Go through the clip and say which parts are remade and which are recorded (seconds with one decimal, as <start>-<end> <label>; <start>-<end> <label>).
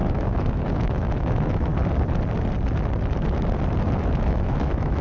0.0-1.7 remade; 1.7-4.0 recorded; 4.0-5.0 remade